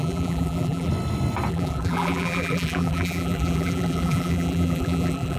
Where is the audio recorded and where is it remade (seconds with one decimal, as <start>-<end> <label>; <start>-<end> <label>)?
0.0-0.9 remade; 0.9-1.5 recorded; 1.5-5.4 remade